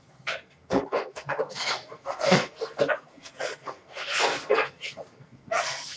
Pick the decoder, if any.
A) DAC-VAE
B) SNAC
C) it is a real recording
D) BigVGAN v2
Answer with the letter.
B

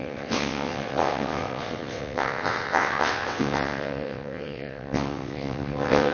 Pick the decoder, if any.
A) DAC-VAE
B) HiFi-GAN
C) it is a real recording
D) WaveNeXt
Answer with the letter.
D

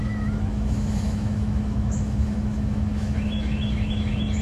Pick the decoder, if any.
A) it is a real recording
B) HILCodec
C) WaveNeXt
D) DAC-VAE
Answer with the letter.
D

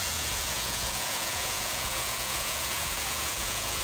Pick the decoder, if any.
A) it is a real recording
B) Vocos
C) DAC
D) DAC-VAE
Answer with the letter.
B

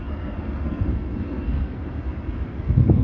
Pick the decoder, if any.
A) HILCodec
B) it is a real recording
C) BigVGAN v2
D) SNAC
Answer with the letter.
D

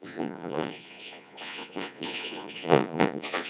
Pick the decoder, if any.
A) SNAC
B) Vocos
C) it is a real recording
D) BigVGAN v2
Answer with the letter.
B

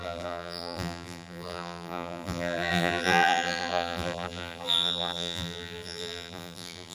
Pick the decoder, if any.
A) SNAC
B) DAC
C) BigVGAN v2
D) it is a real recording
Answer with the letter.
C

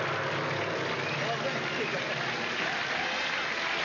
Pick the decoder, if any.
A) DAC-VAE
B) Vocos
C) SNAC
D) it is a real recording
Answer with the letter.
D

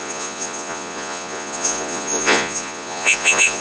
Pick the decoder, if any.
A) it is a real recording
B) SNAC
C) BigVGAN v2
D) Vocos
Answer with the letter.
D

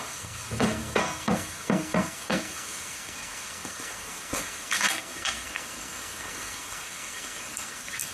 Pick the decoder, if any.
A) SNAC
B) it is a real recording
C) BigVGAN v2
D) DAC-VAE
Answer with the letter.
A